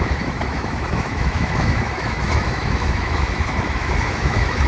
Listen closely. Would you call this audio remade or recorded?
remade